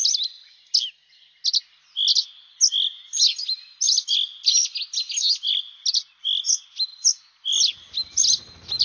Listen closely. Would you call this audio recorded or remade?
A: recorded